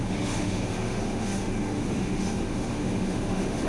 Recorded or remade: remade